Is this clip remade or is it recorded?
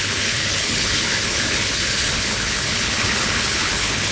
remade